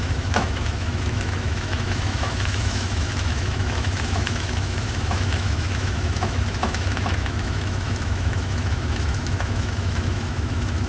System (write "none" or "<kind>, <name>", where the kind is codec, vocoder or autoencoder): autoencoder, DAC-VAE